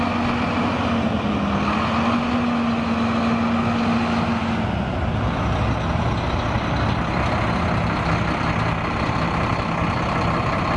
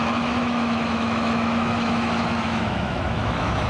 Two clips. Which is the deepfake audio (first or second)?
second